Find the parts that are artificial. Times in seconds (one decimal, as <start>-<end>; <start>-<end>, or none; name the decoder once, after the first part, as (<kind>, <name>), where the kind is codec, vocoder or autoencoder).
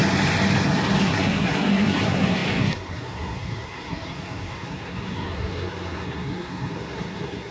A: 1.0-7.5 (codec, SNAC)